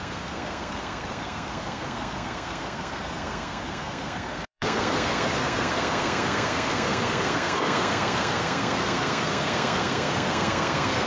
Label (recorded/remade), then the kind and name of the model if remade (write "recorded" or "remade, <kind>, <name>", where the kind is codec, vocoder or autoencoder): remade, codec, SNAC